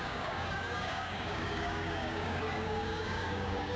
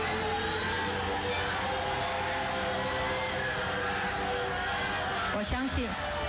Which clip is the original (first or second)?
second